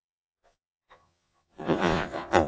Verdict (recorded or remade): remade